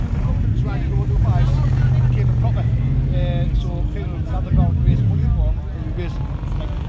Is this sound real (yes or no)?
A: yes